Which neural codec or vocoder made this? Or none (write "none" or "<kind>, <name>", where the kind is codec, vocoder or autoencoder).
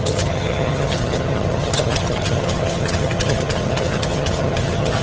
vocoder, HiFi-GAN